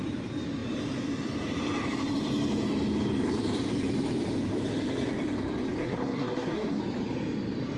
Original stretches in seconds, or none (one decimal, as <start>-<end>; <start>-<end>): 0.0-5.8; 6.8-7.8